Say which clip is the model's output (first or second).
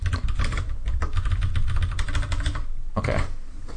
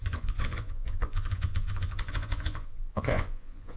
second